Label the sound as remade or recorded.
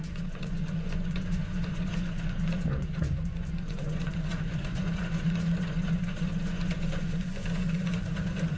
remade